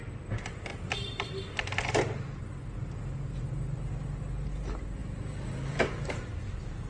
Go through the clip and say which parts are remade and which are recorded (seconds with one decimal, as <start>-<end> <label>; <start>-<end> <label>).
0.0-0.7 recorded; 0.7-1.3 remade; 1.3-6.9 recorded